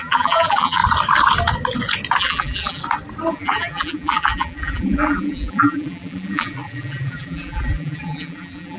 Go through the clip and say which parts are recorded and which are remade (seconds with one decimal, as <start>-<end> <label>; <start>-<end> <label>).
0.0-0.8 remade; 0.8-2.2 recorded; 2.2-2.8 remade; 2.8-3.3 recorded; 3.3-8.8 remade